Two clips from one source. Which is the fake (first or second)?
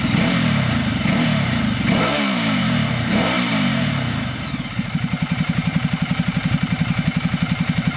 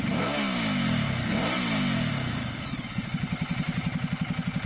first